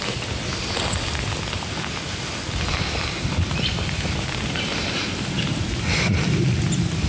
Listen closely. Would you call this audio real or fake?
real